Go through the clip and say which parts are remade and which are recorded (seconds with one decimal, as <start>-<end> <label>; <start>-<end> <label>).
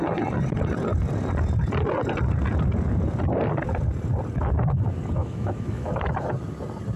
0.0-5.2 recorded; 5.2-6.3 remade; 6.3-7.0 recorded